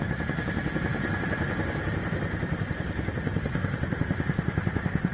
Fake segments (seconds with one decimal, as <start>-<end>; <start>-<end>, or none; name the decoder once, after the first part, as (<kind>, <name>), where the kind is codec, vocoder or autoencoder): none